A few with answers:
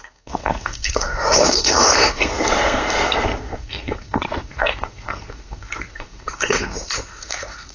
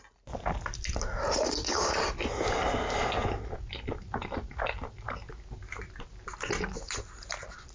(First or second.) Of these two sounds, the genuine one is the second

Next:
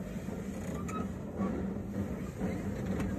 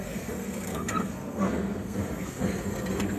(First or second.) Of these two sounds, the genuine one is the first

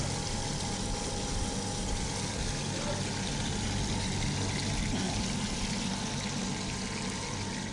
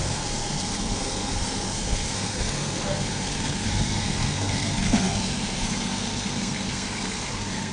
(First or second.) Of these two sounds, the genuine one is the first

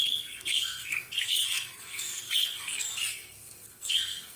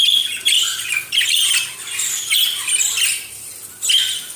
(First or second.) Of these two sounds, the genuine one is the second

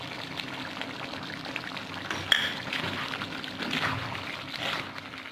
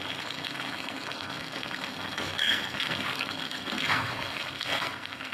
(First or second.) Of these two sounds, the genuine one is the first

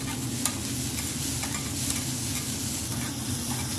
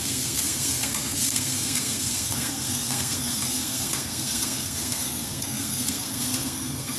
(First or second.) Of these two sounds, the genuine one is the first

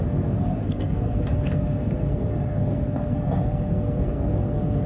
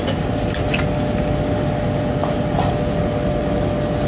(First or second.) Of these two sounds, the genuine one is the second